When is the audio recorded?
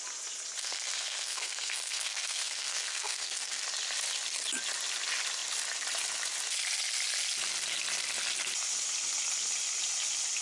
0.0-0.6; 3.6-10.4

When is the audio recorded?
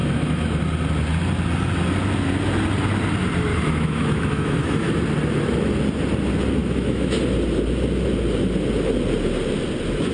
0.6-3.5; 4.9-6.6; 7.2-10.1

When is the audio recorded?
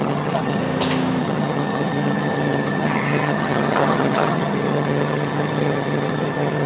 0.6-1.2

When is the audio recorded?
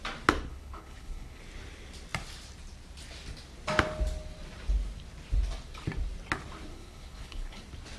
0.0-0.5; 1.4-6.7; 7.6-8.0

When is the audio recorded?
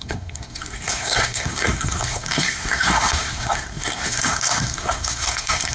none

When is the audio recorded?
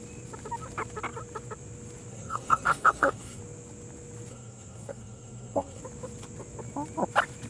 0.0-2.1; 3.4-4.3; 5.8-7.5